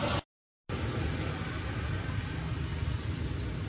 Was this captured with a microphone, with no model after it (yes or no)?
yes